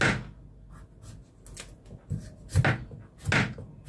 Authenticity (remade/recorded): recorded